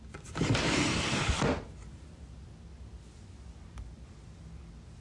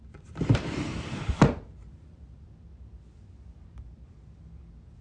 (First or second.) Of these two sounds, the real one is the first